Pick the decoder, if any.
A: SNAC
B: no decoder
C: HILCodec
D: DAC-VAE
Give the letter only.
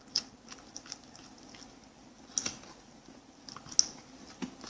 B